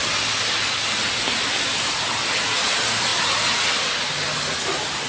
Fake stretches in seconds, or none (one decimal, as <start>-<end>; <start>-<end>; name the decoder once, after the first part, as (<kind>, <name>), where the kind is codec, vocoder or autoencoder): none